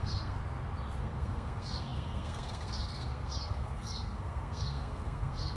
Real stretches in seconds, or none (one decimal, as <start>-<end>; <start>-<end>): 0.4-1.0